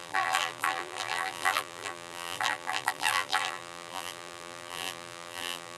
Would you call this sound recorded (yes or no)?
no